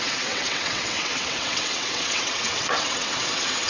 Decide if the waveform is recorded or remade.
remade